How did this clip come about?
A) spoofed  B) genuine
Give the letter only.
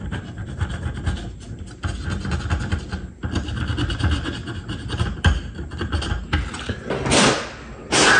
B